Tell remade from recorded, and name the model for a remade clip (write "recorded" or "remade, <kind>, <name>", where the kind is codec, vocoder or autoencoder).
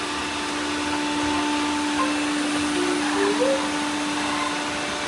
recorded